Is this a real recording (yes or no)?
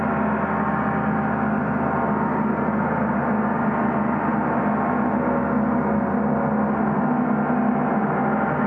yes